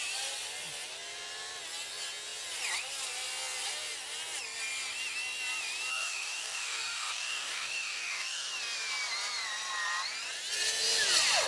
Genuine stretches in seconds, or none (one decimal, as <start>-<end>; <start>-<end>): 0.0-5.9; 8.5-11.5